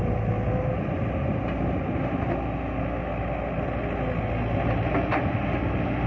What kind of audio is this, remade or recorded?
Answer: recorded